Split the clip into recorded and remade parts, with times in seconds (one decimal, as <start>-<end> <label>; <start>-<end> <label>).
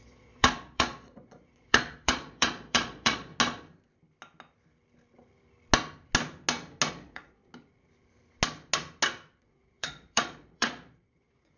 0.0-3.3 remade; 3.3-6.9 recorded; 6.9-7.4 remade; 7.4-9.4 recorded; 9.4-11.6 remade